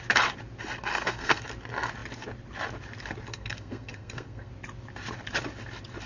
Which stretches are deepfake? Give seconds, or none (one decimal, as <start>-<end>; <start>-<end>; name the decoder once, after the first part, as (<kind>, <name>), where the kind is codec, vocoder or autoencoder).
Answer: 0.9-1.4 (codec, SNAC); 3.3-4.5